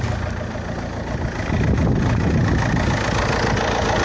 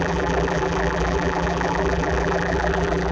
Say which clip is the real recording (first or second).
first